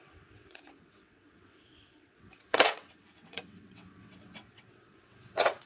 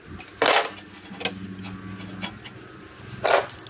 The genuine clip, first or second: second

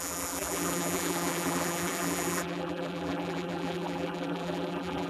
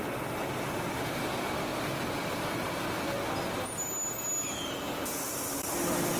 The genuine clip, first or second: second